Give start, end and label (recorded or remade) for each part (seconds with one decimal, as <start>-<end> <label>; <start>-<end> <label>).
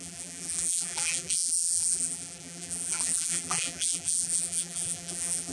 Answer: 0.0-5.5 remade